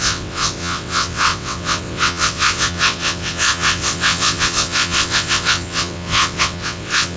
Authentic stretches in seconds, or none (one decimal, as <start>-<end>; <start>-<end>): none